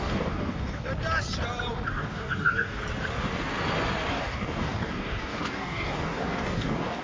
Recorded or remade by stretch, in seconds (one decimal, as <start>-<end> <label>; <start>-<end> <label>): 0.0-0.9 remade; 0.9-1.9 recorded; 1.9-2.8 remade; 2.8-4.1 recorded; 4.1-7.0 remade